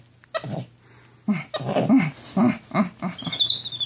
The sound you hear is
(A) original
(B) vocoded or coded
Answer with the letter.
A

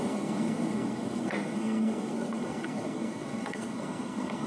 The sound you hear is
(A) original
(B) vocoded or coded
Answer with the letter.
B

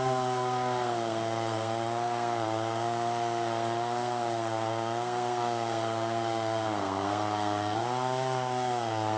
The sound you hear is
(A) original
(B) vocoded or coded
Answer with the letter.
B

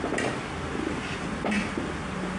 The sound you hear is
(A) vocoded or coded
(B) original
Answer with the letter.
B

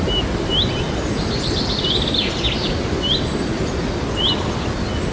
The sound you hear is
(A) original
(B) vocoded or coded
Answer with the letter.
A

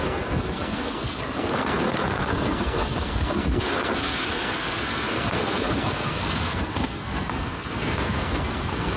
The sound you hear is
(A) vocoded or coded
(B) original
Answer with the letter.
A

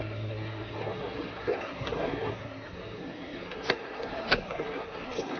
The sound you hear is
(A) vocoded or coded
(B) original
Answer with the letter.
A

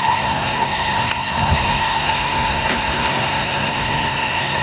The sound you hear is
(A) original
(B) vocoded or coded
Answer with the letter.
B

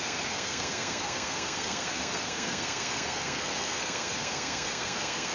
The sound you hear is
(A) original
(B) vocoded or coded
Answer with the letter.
B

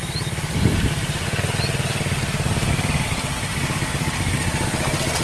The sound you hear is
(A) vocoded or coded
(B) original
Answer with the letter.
B